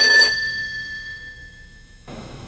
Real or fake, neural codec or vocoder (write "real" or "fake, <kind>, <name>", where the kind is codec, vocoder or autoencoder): fake, autoencoder, DAC-VAE